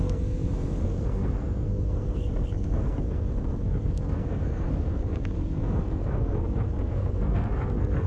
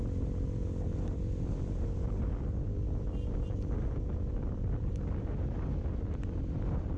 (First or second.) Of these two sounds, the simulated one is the first